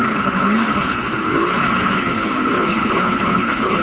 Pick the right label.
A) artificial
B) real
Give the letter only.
A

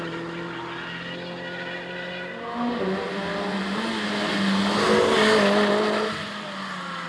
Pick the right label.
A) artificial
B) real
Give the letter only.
B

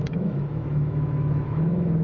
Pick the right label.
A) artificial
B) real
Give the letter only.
A